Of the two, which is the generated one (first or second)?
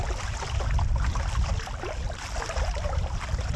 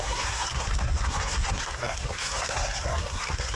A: second